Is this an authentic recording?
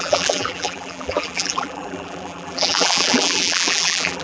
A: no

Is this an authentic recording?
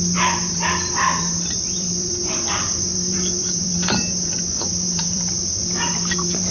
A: no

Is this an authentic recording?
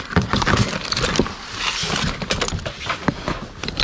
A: yes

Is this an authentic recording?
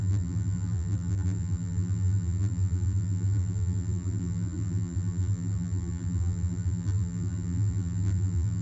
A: no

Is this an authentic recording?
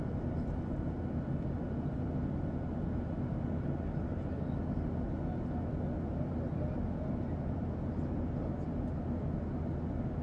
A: yes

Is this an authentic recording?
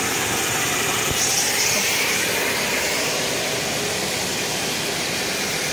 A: no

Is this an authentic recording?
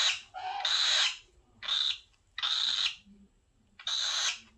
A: yes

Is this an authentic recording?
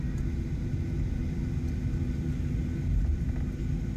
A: yes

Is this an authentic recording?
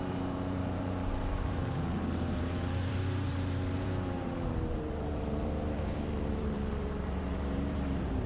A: no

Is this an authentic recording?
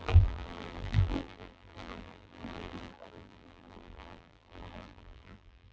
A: no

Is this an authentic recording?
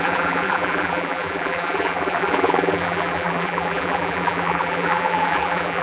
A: no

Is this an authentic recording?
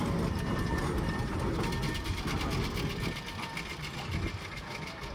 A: yes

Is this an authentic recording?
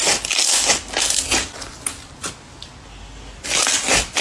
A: yes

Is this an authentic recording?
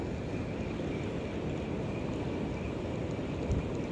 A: yes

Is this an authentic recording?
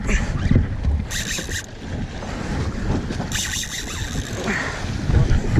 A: yes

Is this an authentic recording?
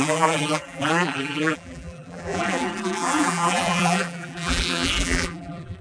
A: no